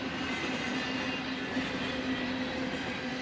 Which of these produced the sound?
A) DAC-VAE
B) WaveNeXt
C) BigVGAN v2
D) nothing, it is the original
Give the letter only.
D